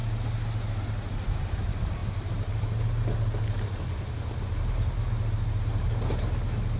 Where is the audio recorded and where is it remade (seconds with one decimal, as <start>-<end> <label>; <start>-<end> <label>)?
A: 0.0-6.8 recorded